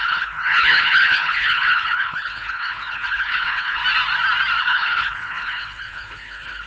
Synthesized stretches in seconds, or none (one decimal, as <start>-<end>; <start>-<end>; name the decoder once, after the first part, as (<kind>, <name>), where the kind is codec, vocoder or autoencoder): 0.0-3.8 (codec, HILCodec); 4.6-6.7